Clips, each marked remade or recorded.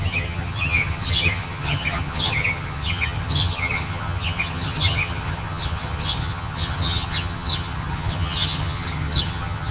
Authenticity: remade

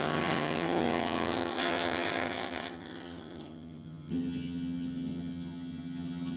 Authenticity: remade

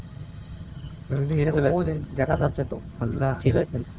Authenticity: remade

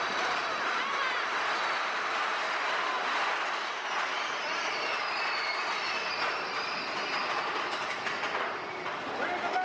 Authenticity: recorded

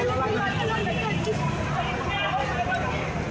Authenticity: recorded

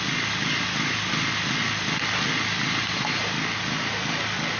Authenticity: recorded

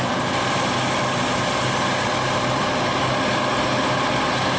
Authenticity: recorded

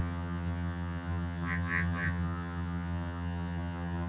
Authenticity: remade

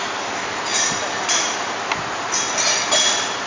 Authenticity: recorded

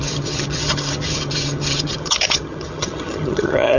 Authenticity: remade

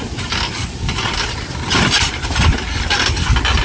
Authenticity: recorded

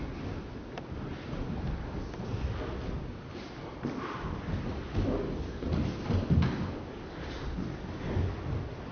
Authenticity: recorded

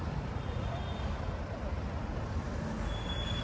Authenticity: recorded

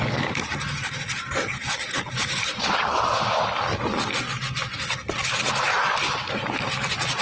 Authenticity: recorded